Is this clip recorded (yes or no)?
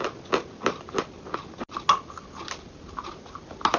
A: yes